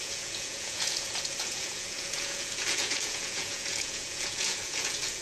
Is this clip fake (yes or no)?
yes